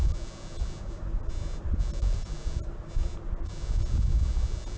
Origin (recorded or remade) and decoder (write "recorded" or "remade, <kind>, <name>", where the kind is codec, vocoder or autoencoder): recorded